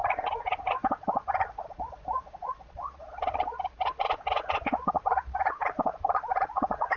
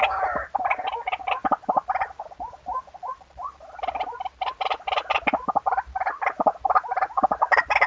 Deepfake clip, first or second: first